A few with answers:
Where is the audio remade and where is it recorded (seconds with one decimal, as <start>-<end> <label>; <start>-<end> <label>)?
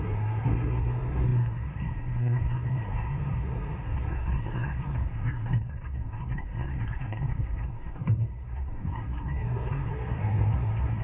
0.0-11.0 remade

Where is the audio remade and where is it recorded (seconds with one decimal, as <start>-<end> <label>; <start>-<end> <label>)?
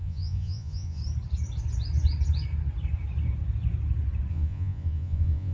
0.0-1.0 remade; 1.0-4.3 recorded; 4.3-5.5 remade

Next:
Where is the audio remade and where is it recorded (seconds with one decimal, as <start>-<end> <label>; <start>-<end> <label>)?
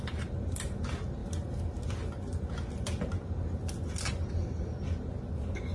0.0-5.7 recorded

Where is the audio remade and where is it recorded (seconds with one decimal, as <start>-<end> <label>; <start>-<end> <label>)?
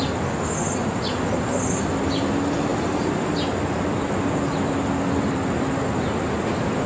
0.0-6.9 recorded